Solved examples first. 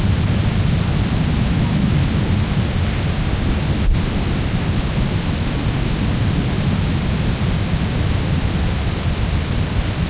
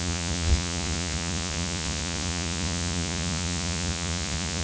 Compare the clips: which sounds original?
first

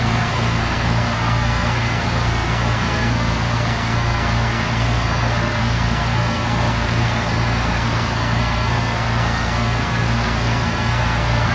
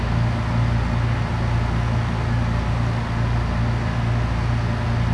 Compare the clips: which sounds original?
second